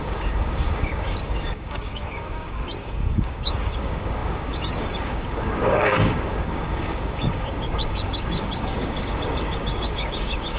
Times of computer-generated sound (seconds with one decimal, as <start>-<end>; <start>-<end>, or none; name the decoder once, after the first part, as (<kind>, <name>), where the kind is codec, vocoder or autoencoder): 0.0-10.6 (codec, DAC)